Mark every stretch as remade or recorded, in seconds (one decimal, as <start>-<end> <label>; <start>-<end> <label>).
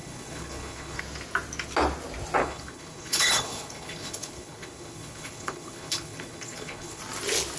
0.0-1.0 remade; 1.0-2.4 recorded; 2.4-7.0 remade; 7.0-7.6 recorded